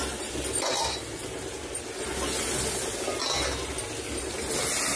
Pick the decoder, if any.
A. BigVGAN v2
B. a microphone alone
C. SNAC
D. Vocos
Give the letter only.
B